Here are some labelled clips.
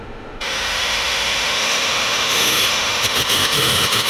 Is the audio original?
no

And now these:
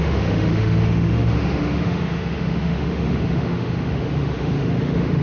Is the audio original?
no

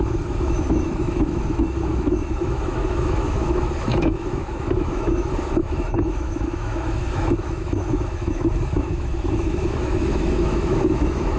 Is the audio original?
no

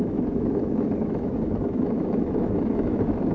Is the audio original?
no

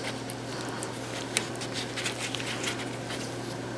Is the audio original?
yes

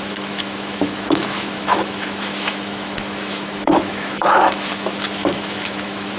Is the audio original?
no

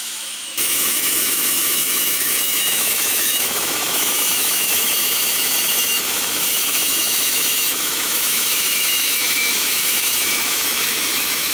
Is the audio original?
no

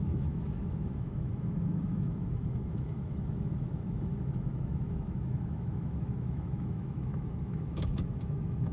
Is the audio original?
no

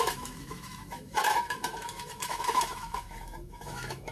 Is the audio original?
no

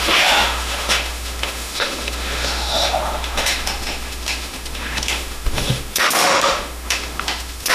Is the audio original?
no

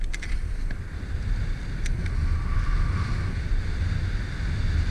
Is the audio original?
yes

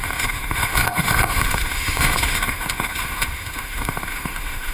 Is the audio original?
no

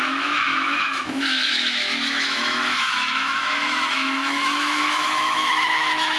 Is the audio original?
no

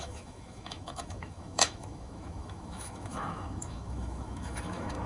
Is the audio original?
no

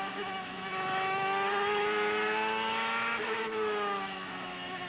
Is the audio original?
no